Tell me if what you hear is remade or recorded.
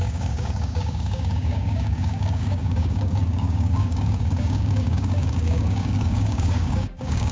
remade